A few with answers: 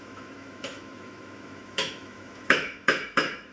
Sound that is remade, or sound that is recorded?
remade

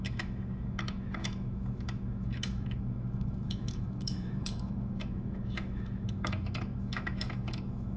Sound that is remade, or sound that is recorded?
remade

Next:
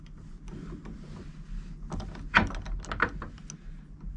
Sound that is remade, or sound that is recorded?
recorded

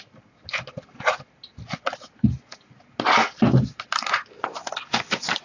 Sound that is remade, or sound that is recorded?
recorded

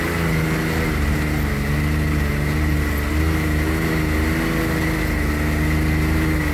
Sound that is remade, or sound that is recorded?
recorded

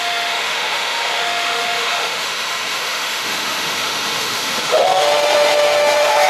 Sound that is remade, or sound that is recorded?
remade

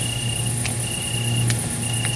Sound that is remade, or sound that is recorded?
recorded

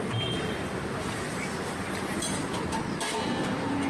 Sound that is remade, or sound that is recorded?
recorded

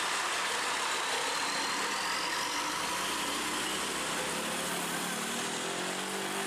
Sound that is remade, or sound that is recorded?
recorded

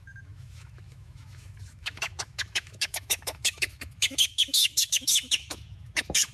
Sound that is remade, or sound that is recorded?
remade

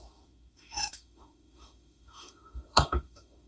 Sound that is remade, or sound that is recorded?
remade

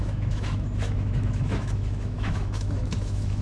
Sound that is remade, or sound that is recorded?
remade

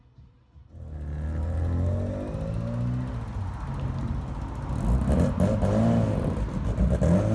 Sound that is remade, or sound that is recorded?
recorded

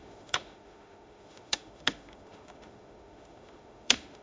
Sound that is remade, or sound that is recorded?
remade